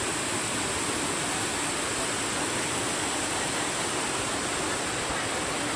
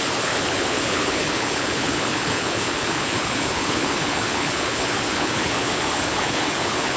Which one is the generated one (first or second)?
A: second